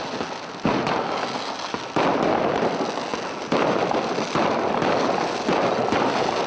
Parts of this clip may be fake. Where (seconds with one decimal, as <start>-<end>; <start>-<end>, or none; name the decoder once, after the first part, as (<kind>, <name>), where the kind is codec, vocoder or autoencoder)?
none